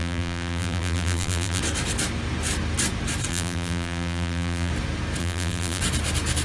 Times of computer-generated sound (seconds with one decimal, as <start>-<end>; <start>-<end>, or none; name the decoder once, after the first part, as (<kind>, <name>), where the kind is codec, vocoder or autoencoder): 0.0-1.6 (vocoder, BigVGAN v2); 3.3-4.7; 5.2-5.8